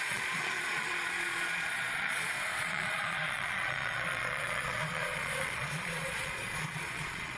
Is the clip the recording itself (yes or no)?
no